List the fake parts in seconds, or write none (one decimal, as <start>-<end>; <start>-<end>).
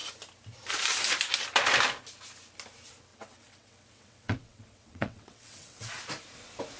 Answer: 3.1-5.9